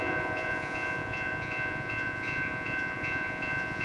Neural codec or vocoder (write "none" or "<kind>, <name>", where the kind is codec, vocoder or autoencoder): vocoder, Vocos